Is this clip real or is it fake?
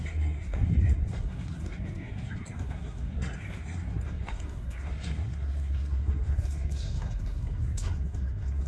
fake